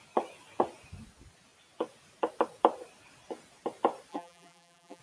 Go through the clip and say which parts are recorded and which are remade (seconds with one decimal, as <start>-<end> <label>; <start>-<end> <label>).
0.0-4.1 recorded; 4.1-5.0 remade